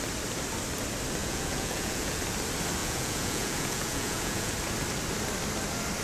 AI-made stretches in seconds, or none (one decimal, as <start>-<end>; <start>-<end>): 1.2-2.2; 2.8-4.5

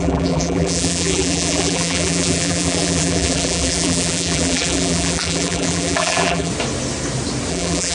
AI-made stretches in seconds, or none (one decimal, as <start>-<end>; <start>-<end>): 0.0-6.5; 7.5-7.9

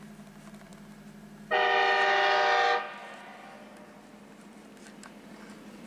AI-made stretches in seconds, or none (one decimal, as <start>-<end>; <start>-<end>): none

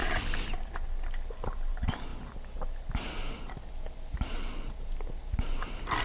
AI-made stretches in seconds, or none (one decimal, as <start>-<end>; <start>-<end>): none

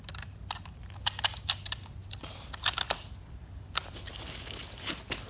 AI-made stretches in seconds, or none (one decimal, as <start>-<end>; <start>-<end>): none

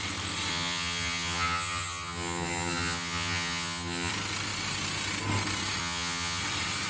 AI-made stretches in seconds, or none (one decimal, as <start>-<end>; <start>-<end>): 0.5-4.1; 5.8-6.4

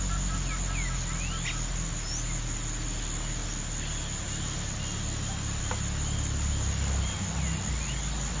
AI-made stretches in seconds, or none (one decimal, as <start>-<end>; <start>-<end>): none

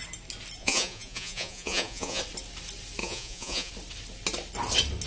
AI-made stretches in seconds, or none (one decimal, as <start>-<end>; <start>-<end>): 0.6-2.2; 3.0-3.7